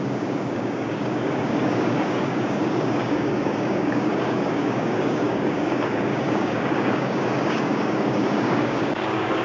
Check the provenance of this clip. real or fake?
fake